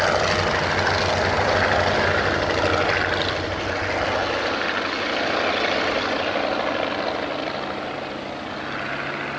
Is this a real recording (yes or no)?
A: yes